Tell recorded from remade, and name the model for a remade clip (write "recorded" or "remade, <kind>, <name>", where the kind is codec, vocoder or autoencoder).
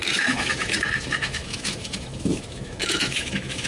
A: remade, autoencoder, DAC-VAE